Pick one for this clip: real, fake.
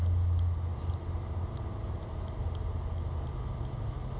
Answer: real